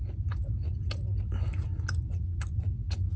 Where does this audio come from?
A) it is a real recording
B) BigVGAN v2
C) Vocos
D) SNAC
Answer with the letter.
A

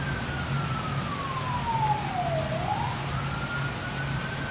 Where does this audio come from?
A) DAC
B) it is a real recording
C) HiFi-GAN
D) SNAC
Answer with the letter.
B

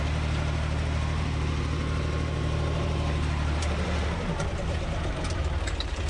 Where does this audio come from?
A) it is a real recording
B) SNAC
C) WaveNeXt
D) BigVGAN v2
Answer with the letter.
D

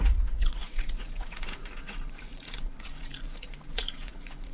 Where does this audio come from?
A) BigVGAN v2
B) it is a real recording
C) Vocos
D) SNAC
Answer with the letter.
C